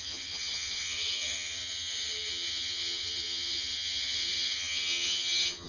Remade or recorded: remade